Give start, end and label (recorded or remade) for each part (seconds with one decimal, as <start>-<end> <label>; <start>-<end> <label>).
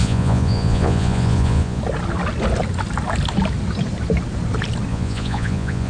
0.0-1.8 remade; 1.8-4.9 recorded; 4.9-5.9 remade